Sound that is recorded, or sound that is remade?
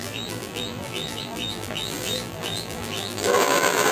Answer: remade